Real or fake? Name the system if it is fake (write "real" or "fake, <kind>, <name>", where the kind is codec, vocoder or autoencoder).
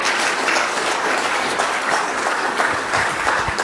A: fake, codec, DAC